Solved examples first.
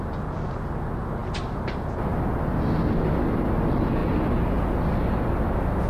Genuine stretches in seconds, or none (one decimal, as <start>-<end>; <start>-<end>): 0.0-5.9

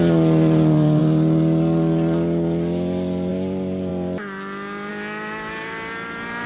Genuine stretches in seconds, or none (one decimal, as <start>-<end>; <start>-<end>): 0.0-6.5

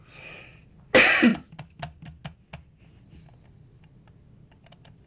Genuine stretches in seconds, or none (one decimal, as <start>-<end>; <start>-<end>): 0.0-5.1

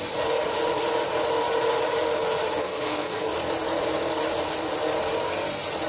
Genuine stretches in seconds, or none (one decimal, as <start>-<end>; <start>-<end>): 0.0-2.6; 3.3-5.9